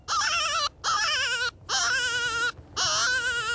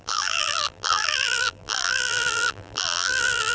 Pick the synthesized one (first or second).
second